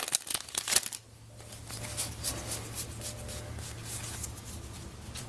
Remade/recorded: recorded